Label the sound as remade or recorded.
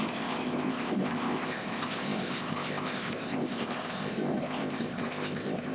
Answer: remade